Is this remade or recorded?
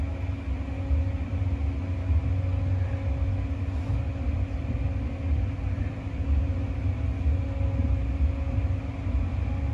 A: recorded